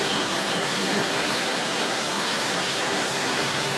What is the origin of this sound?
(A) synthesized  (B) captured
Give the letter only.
A